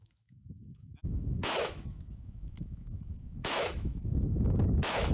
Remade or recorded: remade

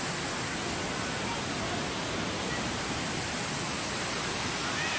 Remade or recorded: recorded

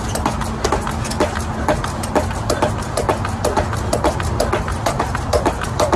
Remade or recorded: recorded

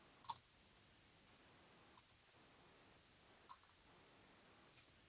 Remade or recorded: recorded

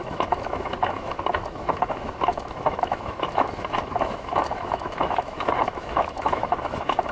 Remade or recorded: remade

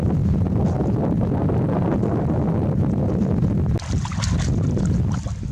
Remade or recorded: recorded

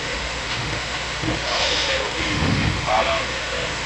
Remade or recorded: remade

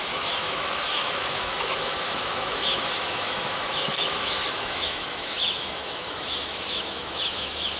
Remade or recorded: remade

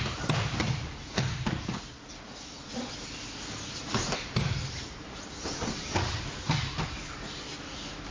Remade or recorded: recorded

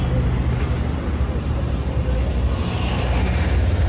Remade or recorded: recorded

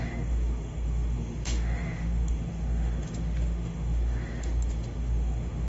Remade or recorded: remade